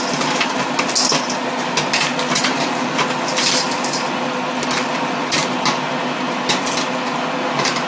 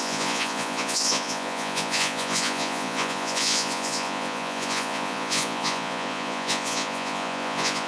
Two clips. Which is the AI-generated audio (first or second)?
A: second